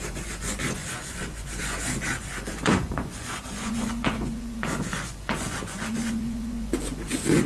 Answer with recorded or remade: remade